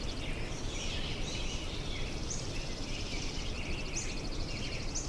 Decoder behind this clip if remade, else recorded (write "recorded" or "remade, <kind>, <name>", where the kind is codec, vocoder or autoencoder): recorded